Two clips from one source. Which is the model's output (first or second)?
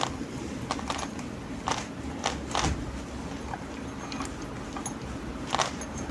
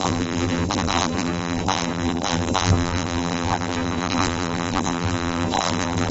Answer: second